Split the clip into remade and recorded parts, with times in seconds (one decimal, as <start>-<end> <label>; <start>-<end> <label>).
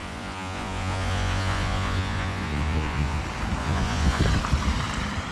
0.0-3.2 remade; 3.2-3.6 recorded; 3.6-4.2 remade; 4.2-5.3 recorded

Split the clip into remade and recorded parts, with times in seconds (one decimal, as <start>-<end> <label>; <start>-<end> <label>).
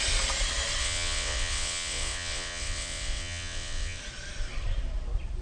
0.0-0.8 recorded; 0.8-4.0 remade; 4.0-5.4 recorded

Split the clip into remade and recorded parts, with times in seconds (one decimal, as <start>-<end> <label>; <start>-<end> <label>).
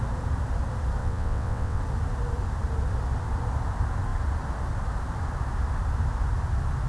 0.0-1.0 recorded; 1.0-1.8 remade; 1.8-6.9 recorded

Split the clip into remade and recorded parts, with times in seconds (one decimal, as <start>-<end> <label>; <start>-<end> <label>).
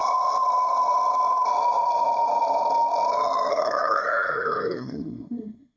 0.0-3.5 recorded; 3.5-5.8 remade